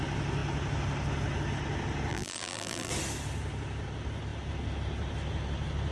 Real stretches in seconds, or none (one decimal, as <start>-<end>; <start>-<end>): 0.0-2.1; 2.9-5.9